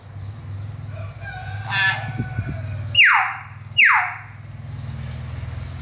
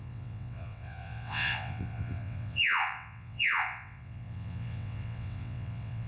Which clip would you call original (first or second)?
first